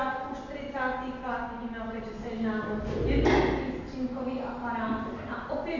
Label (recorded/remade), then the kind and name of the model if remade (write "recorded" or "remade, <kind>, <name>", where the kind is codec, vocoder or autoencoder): recorded